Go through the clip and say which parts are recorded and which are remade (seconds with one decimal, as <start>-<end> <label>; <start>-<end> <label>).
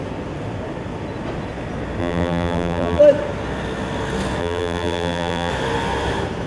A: 0.0-2.0 recorded; 2.0-3.0 remade; 3.0-4.4 recorded; 4.4-5.5 remade; 5.5-6.5 recorded